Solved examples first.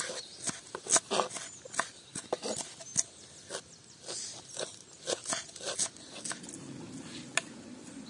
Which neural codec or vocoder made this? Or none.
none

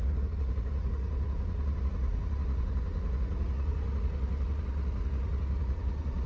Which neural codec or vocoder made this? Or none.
vocoder, Vocos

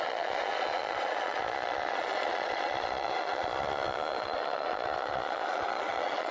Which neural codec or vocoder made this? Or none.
vocoder, Vocos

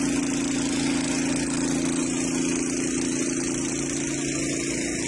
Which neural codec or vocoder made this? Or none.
none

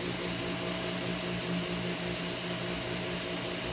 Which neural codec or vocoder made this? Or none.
none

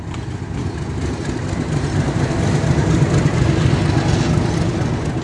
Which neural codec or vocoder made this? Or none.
none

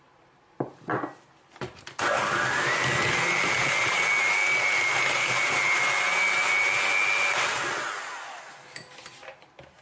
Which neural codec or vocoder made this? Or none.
none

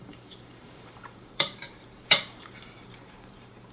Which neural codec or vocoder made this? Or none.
vocoder, BigVGAN v2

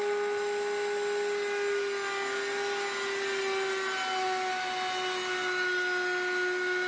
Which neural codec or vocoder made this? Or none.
none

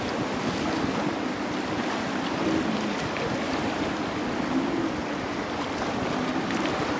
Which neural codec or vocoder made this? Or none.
none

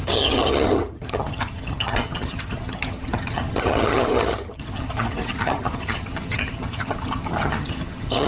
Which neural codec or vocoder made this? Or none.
vocoder, HiFi-GAN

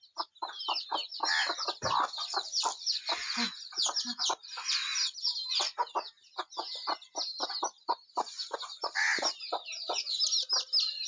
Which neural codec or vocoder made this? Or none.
none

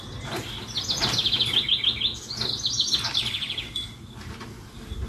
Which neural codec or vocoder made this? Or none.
none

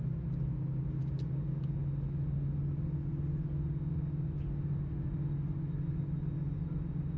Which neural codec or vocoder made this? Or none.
none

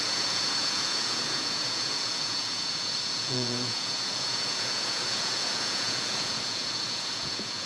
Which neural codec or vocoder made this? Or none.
vocoder, Vocos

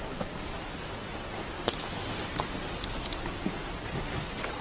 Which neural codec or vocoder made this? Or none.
none